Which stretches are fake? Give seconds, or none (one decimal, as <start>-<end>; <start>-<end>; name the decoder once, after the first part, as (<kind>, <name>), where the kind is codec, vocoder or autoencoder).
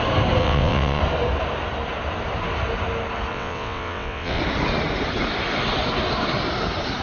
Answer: 0.4-1.0 (vocoder, WaveNeXt); 3.3-4.4